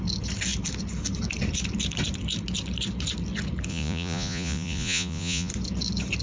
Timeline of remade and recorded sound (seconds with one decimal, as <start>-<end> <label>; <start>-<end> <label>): 0.0-3.7 recorded; 3.7-5.5 remade; 5.5-6.2 recorded